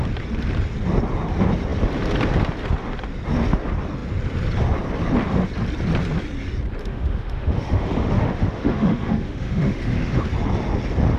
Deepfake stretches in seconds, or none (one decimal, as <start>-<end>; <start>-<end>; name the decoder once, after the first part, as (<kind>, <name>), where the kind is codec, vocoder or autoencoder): 6.8-10.2 (autoencoder, DAC-VAE)